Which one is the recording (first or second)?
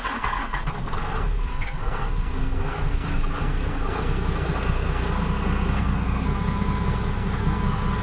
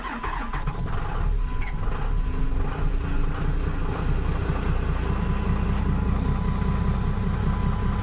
second